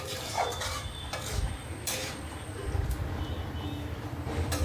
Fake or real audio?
fake